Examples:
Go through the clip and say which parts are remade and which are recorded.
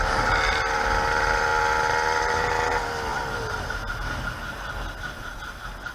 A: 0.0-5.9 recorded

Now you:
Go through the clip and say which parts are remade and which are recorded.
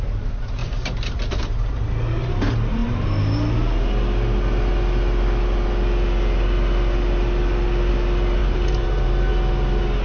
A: 0.0-0.6 recorded; 0.6-1.3 remade; 1.3-8.4 recorded; 8.4-9.3 remade; 9.3-10.0 recorded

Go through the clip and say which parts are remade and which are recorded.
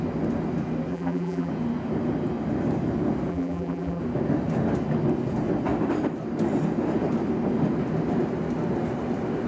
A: 0.0-0.9 recorded; 0.9-1.5 remade; 1.5-3.3 recorded; 3.3-4.0 remade; 4.0-9.5 recorded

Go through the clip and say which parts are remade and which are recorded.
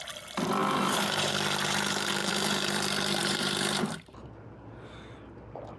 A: 0.0-0.6 recorded; 0.6-1.3 remade; 1.3-2.2 recorded; 2.2-2.8 remade; 2.8-3.2 recorded; 3.2-4.3 remade; 4.3-5.8 recorded